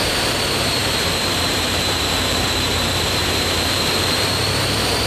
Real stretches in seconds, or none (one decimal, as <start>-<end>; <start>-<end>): none